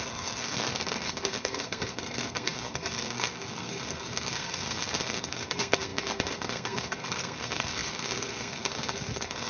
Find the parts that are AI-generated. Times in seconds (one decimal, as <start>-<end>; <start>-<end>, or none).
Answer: 0.0-9.5